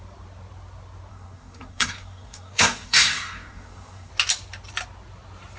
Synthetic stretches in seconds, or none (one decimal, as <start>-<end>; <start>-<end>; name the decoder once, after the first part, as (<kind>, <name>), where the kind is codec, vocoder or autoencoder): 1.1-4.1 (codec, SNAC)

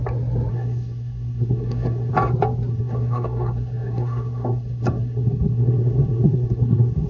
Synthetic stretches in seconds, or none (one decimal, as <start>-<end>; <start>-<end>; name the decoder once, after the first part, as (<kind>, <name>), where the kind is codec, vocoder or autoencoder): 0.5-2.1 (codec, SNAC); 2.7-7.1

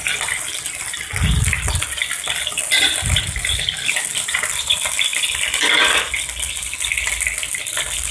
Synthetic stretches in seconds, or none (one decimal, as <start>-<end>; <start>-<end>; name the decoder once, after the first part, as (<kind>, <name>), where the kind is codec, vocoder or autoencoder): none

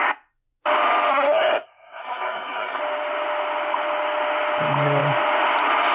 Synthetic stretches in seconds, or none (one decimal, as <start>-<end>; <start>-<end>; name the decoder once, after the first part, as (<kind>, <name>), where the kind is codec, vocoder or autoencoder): 1.1-2.8 (codec, SNAC)

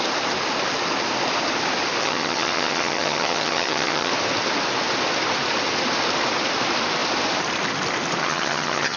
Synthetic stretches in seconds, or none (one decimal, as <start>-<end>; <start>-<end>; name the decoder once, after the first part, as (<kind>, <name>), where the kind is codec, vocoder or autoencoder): 2.0-4.1 (vocoder, HiFi-GAN); 8.2-9.0

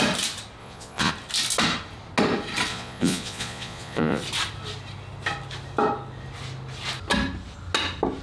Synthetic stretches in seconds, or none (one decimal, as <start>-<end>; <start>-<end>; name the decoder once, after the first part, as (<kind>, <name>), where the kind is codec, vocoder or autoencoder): 0.6-1.1 (vocoder, Vocos); 2.7-4.2